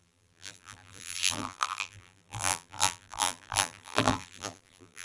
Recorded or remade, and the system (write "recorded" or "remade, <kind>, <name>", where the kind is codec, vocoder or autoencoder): remade, vocoder, BigVGAN v2